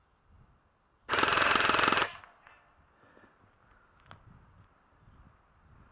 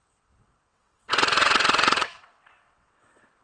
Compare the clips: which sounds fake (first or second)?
second